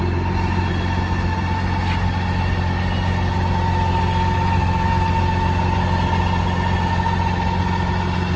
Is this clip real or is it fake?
real